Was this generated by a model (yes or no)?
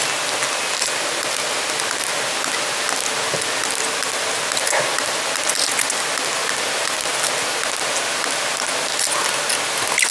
no